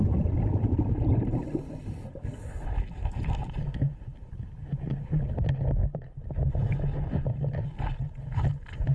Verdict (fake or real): real